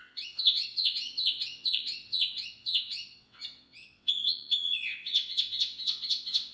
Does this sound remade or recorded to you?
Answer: remade